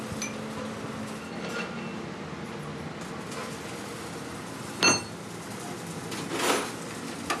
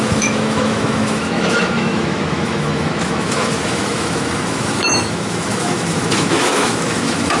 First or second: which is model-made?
second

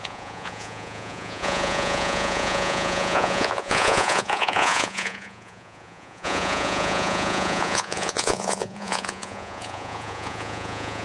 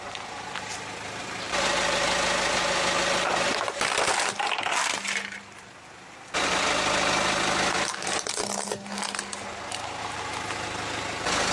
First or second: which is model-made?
first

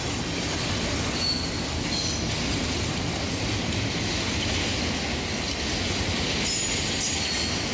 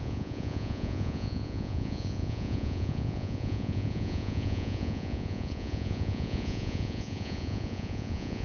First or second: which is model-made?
second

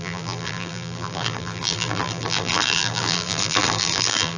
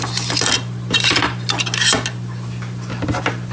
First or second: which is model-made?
first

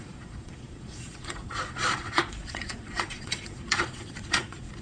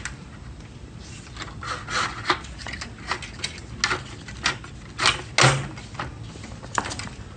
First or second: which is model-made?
first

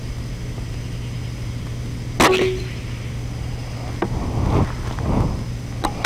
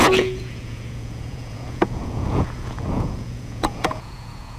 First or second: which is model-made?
second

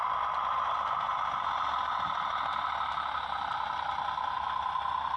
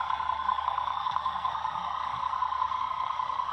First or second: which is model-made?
second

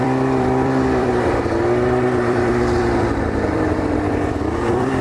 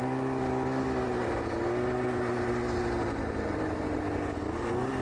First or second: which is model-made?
first